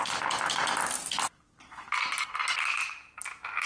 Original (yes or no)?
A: yes